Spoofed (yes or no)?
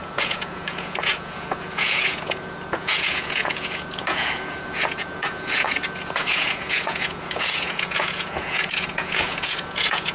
yes